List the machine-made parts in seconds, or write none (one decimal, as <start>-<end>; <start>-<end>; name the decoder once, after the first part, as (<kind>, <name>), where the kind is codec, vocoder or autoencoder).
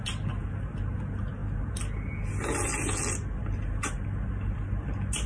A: none